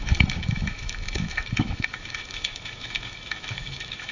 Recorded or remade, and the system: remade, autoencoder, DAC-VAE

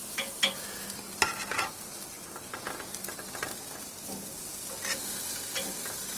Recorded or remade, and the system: recorded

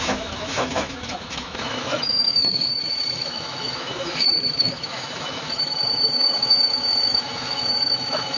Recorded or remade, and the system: remade, autoencoder, DAC-VAE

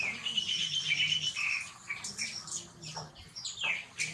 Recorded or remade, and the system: recorded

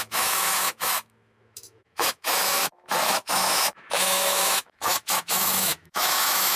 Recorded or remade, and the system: remade, autoencoder, DAC-VAE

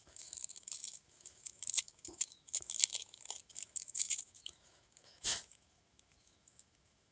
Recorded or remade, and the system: remade, autoencoder, DAC-VAE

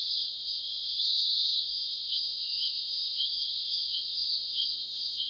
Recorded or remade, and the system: remade, autoencoder, DAC-VAE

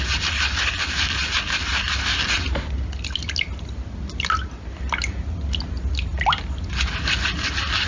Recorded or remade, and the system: recorded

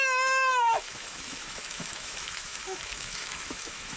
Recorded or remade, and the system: remade, autoencoder, DAC-VAE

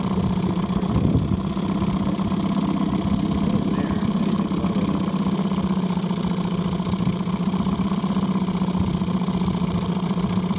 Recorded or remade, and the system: recorded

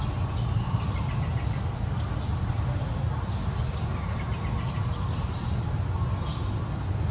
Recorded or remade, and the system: recorded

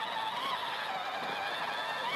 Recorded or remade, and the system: recorded